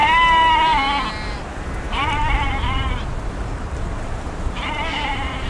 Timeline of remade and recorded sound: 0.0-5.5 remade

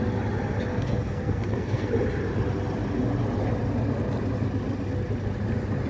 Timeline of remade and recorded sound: 0.0-0.7 recorded; 0.7-1.9 remade; 1.9-5.9 recorded